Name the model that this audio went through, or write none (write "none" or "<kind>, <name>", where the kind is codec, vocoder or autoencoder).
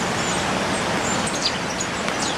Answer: none